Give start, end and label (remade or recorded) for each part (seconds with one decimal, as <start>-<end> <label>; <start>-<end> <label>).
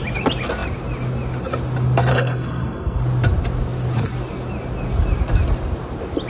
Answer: 0.0-2.1 recorded; 2.1-3.0 remade; 3.0-6.3 recorded